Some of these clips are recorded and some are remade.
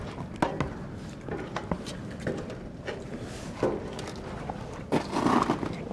recorded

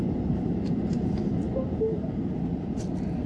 remade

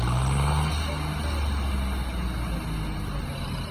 recorded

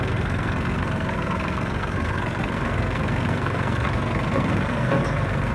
remade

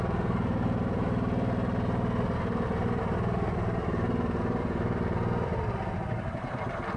remade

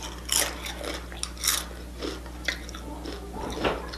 recorded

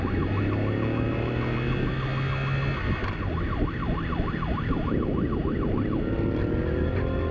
recorded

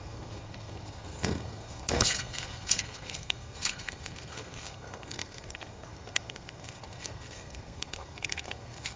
remade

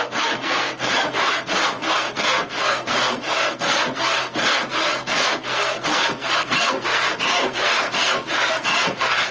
remade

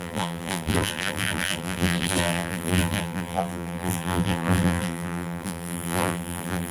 remade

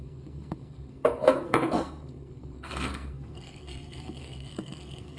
remade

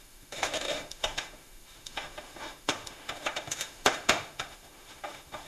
remade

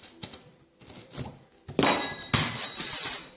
recorded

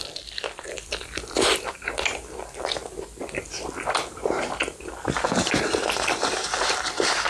remade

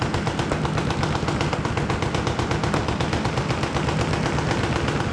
recorded